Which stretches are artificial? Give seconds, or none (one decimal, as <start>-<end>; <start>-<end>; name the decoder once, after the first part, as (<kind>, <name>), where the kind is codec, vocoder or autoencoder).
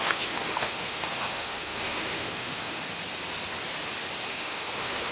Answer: 0.0-2.8 (autoencoder, DAC-VAE); 4.3-5.1